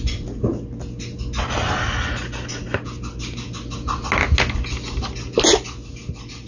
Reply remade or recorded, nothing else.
recorded